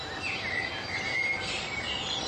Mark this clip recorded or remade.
recorded